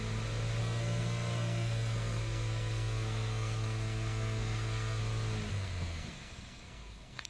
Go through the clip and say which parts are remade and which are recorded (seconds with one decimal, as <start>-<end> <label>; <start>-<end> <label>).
0.0-0.6 recorded; 0.6-5.0 remade; 5.0-5.5 recorded; 5.5-7.3 remade